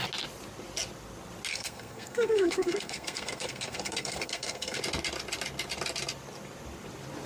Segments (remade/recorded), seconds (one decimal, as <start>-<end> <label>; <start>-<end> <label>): 0.0-1.5 recorded; 1.5-4.8 remade; 4.8-7.3 recorded